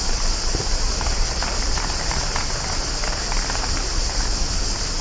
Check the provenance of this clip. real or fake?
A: real